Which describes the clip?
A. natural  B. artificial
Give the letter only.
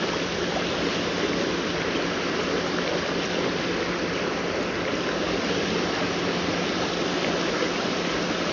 A